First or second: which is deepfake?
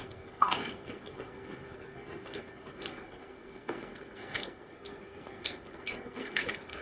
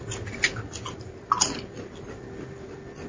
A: first